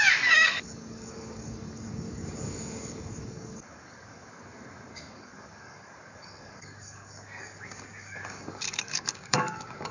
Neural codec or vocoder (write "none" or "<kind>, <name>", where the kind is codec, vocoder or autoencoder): codec, DAC